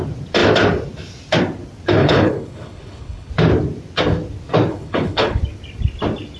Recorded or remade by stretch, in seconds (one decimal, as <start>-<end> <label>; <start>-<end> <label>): 0.0-2.0 recorded; 2.0-3.3 remade; 3.3-4.7 recorded; 4.7-5.4 remade; 5.4-6.4 recorded